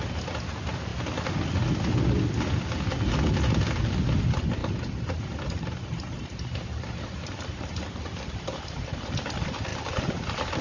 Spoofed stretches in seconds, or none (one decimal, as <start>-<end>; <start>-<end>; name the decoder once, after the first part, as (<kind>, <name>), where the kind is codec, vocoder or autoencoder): 4.6-9.0 (vocoder, BigVGAN v2); 9.7-10.6

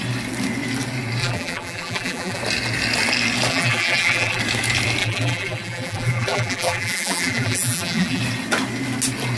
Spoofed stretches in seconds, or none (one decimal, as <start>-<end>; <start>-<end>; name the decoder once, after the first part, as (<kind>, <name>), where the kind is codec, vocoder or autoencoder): 1.2-2.4 (vocoder, BigVGAN v2); 3.5-4.4; 5.0-8.2